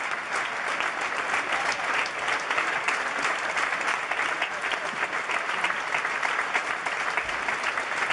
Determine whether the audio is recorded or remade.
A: recorded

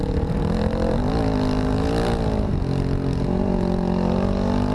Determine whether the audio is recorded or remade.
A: recorded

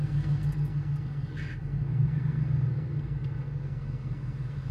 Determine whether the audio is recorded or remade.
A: remade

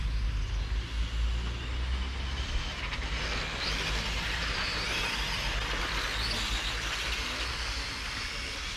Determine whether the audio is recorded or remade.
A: recorded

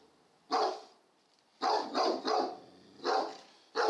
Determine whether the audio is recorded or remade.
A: recorded